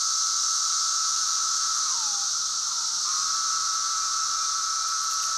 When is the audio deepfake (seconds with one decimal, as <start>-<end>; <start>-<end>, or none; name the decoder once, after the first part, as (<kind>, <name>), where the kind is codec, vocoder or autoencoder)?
1.0-1.7 (autoencoder, DAC-VAE)

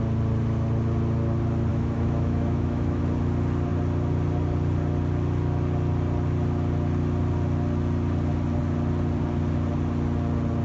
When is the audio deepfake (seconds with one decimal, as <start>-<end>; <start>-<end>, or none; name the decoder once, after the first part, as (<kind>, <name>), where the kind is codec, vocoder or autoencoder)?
1.7-3.0 (autoencoder, DAC-VAE)

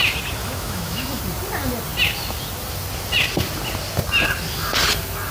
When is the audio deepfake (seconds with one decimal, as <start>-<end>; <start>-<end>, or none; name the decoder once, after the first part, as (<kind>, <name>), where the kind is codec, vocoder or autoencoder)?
0.4-1.2 (autoencoder, DAC-VAE)

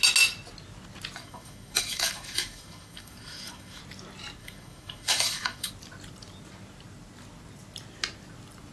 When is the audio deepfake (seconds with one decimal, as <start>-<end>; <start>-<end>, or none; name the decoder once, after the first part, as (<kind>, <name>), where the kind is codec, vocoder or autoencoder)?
1.2-3.8 (autoencoder, DAC-VAE); 4.4-5.7

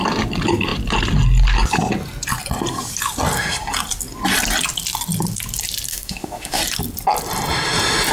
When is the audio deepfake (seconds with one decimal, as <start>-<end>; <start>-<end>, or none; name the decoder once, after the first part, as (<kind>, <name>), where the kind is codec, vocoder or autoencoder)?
5.9-6.6 (autoencoder, DAC-VAE)